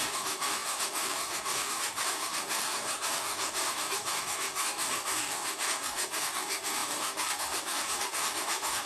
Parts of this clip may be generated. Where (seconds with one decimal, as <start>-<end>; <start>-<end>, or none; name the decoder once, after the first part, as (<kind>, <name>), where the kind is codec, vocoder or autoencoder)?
0.0-8.9 (codec, DAC)